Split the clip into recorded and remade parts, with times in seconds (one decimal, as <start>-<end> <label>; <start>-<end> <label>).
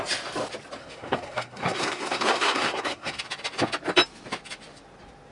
0.0-0.8 recorded; 0.8-3.2 remade; 3.2-5.3 recorded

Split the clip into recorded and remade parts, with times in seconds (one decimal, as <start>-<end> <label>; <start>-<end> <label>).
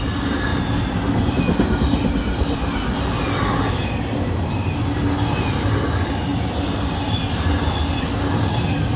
0.0-9.0 recorded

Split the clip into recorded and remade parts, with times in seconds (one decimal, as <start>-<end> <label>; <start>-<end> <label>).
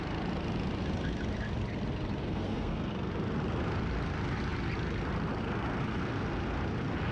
0.0-2.2 recorded; 2.2-2.9 remade; 2.9-7.1 recorded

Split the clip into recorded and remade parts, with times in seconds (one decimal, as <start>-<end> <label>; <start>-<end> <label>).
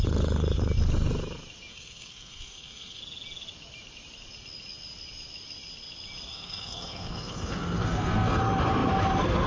0.0-1.7 recorded; 1.7-3.0 remade; 3.0-6.3 recorded; 6.3-8.4 remade; 8.4-9.5 recorded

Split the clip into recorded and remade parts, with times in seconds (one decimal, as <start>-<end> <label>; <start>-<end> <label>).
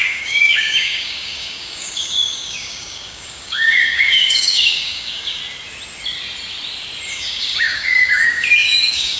0.0-5.4 remade; 5.4-7.1 recorded; 7.1-9.2 remade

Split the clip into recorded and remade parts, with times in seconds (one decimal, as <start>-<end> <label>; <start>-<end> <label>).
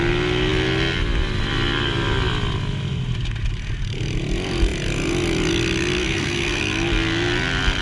0.0-6.0 recorded; 6.0-6.6 remade; 6.6-7.8 recorded